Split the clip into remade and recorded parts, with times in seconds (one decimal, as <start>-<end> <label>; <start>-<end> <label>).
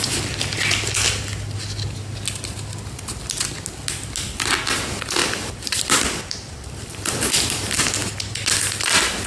0.0-5.2 recorded; 5.2-7.7 remade; 7.7-9.3 recorded